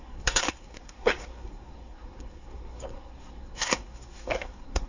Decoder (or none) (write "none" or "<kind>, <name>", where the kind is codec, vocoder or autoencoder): codec, SNAC